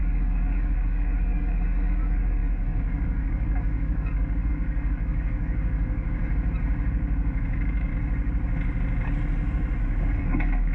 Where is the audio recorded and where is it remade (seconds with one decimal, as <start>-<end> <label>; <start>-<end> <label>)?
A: 0.0-6.2 remade; 6.2-6.9 recorded; 6.9-7.9 remade; 7.9-9.8 recorded; 9.8-10.7 remade